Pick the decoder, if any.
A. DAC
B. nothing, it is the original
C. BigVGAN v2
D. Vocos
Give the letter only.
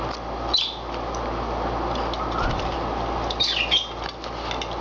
B